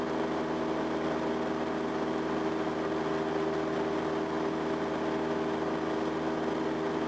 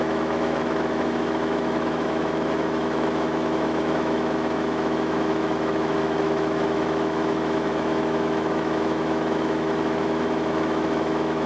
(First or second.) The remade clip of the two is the second